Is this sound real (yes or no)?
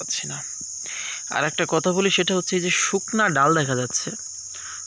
yes